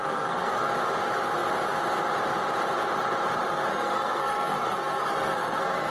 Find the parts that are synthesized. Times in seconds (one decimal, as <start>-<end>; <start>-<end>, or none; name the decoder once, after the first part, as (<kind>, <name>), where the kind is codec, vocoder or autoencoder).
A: 0.0-0.7 (codec, SNAC); 3.7-5.9